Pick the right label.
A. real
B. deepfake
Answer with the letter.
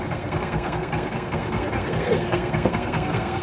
B